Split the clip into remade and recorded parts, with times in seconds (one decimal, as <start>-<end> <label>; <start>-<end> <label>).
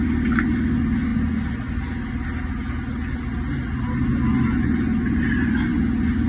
0.0-5.7 recorded; 5.7-6.3 remade